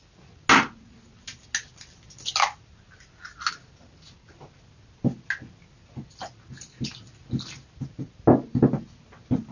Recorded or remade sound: recorded